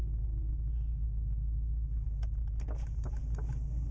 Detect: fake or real real